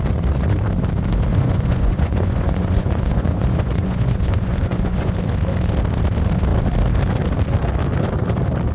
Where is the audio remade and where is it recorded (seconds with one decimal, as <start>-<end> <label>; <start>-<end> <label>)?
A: 0.0-1.3 recorded; 1.3-5.1 remade; 5.1-8.7 recorded